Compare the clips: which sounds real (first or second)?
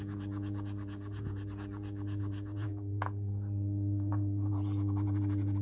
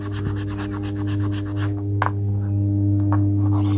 second